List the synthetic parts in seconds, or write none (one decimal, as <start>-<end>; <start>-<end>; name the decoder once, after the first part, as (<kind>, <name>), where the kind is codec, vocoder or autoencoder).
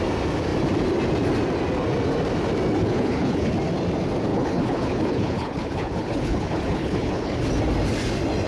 2.8-3.5 (codec, HILCodec); 4.3-7.4